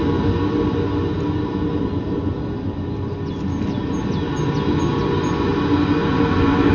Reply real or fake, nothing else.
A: real